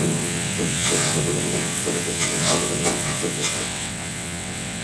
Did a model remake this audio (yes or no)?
yes